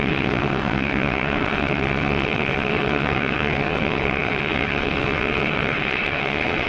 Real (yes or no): no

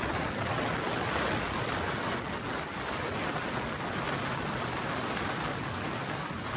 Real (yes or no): yes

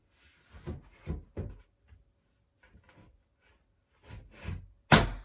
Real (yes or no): yes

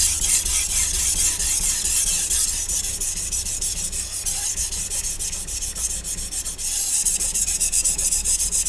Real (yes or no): yes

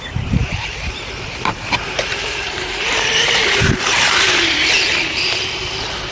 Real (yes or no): no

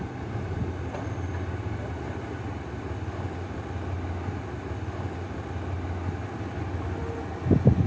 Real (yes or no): yes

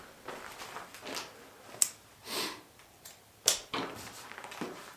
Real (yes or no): yes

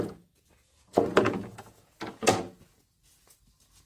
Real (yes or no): no